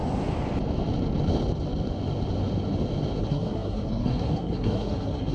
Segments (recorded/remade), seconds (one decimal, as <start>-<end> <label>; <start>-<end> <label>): 0.0-3.2 recorded; 3.2-5.3 remade